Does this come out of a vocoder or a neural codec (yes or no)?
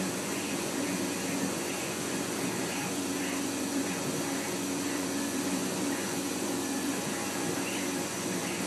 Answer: yes